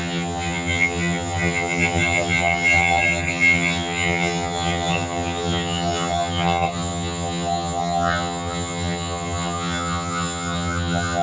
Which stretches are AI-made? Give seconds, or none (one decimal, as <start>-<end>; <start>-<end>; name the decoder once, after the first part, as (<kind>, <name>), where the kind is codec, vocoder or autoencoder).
0.0-11.2 (vocoder, HiFi-GAN)